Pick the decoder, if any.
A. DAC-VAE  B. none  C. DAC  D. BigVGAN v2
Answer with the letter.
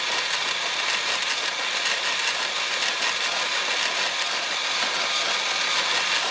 B